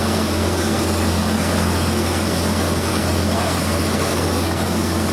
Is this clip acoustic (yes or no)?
no